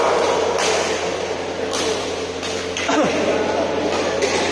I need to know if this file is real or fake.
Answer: real